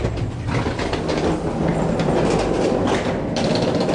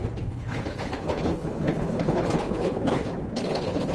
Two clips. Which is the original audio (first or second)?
first